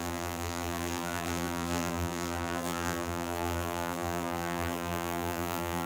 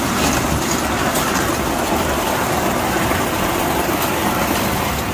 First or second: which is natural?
second